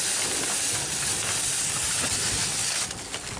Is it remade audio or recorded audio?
recorded